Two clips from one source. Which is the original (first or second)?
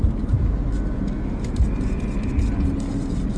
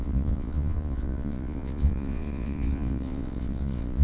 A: first